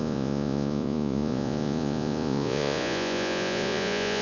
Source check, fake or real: fake